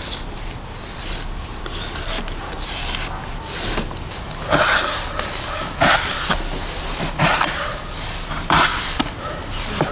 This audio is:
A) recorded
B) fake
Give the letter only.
A